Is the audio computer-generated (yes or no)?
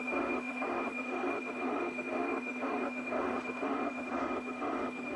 yes